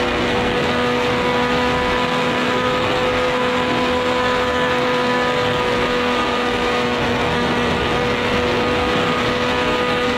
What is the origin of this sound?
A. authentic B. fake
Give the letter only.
B